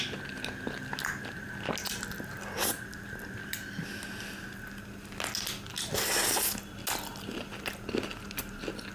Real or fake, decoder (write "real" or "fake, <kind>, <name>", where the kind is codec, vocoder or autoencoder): real